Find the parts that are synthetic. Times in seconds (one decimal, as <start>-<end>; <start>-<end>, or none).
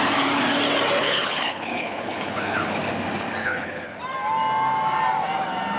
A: 1.0-2.7; 3.4-4.0